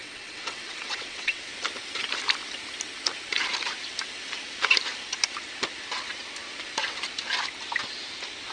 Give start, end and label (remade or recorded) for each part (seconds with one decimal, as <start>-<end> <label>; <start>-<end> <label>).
0.0-1.5 remade; 1.5-8.5 recorded